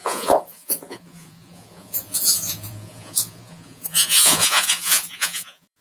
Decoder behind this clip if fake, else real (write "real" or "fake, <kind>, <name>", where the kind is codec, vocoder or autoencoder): fake, vocoder, Vocos